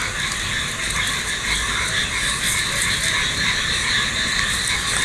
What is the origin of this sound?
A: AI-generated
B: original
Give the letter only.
B